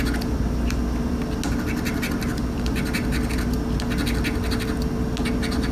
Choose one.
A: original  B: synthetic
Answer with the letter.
A